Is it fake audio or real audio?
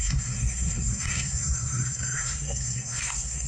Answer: fake